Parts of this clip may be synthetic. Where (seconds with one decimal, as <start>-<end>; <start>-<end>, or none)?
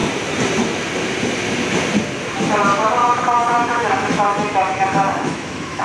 3.0-5.8